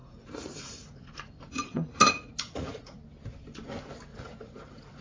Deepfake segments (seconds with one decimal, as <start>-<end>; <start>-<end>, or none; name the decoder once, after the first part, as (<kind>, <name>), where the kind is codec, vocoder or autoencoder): 0.0-3.0 (vocoder, Vocos); 4.1-5.0